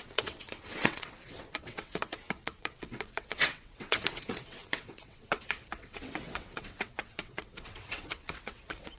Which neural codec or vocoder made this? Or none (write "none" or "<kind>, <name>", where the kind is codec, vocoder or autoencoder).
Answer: vocoder, WaveNeXt